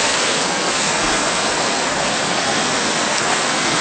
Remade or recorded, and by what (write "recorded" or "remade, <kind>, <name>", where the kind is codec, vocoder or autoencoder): remade, codec, SNAC